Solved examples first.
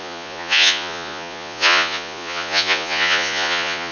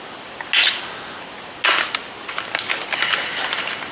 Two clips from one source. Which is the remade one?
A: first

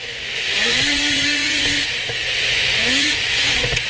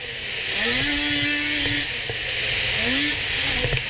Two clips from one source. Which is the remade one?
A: first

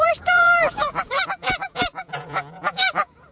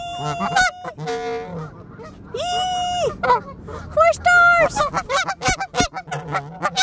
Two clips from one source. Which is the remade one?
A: first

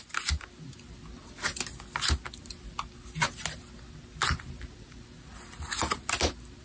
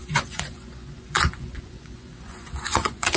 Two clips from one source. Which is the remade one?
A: second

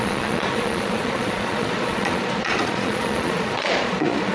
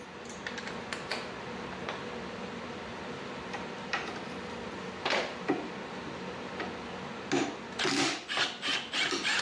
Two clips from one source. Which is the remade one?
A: first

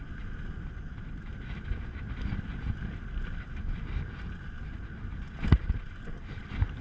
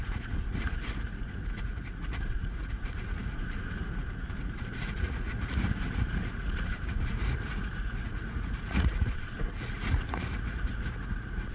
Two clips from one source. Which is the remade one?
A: second